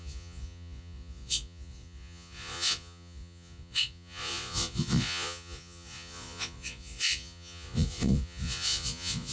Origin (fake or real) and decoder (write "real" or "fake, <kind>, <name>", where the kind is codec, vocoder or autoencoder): fake, vocoder, Vocos